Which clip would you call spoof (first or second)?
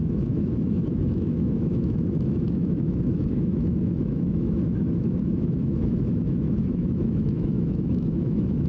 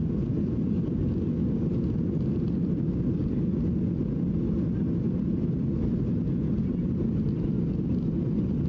first